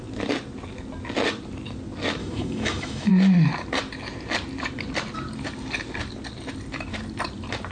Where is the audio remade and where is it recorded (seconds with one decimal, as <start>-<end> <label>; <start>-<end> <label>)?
0.0-2.2 recorded; 2.2-3.1 remade; 3.1-7.7 recorded